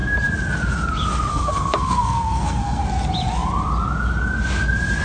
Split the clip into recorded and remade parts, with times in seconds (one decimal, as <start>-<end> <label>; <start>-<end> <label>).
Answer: 0.0-1.3 recorded; 1.3-2.8 remade; 2.8-5.0 recorded